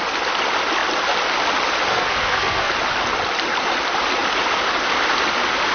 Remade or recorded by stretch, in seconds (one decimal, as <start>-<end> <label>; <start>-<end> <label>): 0.0-1.9 recorded; 1.9-2.7 remade; 2.7-5.7 recorded